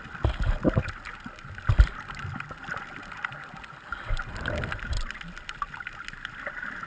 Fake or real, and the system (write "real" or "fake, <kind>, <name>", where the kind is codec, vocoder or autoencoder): real